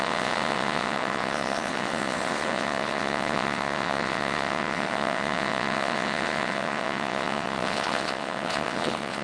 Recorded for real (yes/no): no